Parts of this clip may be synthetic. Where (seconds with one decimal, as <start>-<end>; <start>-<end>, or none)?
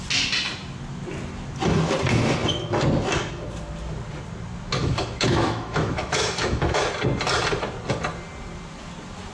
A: 4.8-6.8